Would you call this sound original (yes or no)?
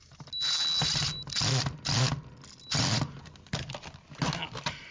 yes